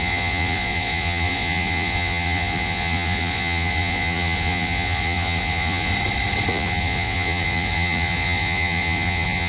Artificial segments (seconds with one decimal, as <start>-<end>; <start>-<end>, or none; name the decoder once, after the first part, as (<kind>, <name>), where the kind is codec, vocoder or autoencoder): 0.0-5.9 (vocoder, Vocos); 6.5-9.5